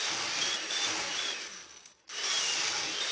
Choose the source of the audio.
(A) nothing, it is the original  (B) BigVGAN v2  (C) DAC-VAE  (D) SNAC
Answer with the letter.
A